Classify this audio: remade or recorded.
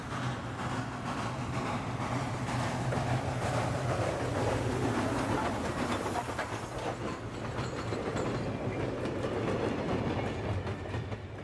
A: recorded